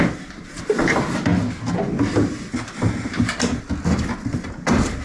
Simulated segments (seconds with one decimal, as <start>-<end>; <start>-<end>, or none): none